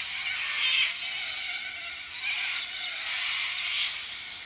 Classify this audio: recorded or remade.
recorded